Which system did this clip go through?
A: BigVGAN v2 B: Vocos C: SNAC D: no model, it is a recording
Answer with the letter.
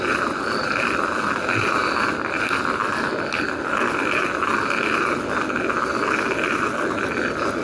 D